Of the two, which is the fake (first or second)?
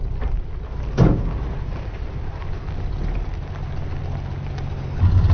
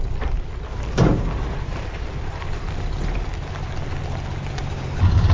second